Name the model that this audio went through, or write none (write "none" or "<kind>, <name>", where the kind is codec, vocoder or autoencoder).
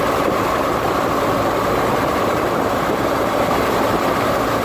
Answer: vocoder, BigVGAN v2